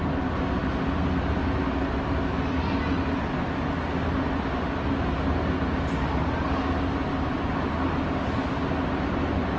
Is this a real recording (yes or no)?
yes